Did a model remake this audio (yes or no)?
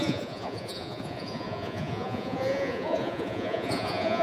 yes